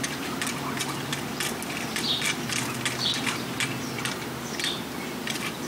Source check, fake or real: fake